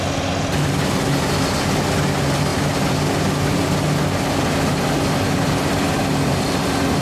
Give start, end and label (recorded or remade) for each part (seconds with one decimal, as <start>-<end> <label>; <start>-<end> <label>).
0.0-2.5 recorded; 2.5-3.1 remade; 3.1-7.0 recorded